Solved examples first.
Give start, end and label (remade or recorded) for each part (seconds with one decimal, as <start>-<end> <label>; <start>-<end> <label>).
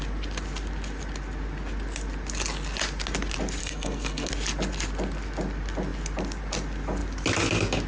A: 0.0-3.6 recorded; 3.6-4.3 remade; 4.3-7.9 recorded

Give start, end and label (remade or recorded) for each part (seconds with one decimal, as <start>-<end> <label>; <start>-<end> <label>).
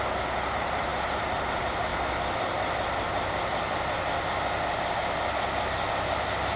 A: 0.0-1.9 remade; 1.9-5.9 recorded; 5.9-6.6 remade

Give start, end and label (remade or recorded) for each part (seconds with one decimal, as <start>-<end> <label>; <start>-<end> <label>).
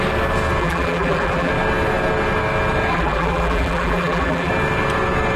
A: 0.0-0.6 recorded; 0.6-1.5 remade; 1.5-2.9 recorded; 2.9-4.5 remade; 4.5-5.4 recorded